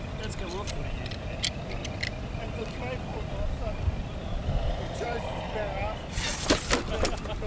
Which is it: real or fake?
real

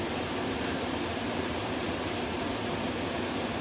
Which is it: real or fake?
fake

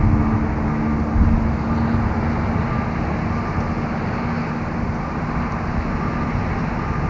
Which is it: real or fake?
real